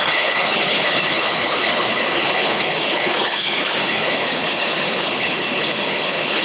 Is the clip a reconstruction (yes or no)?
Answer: yes